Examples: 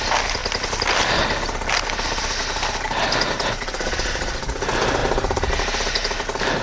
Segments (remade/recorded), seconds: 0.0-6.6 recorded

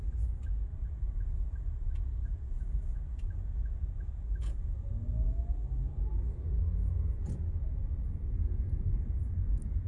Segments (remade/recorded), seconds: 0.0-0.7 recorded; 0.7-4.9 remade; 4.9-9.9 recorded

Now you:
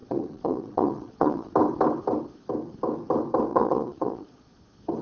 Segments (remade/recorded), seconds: 0.0-1.5 remade; 1.5-3.5 recorded; 3.5-4.5 remade; 4.5-5.0 recorded

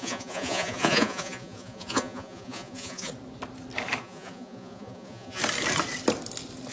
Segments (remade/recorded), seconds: 0.0-3.1 remade; 3.1-4.0 recorded; 4.0-5.4 remade; 5.4-6.7 recorded

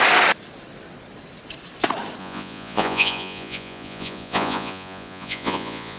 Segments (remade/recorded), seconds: 0.0-2.2 recorded; 2.2-6.0 remade